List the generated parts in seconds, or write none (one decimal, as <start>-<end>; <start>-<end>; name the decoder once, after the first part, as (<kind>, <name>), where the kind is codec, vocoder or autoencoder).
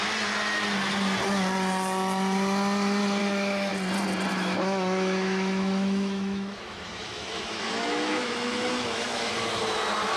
3.2-3.7 (autoencoder, DAC-VAE); 4.3-9.6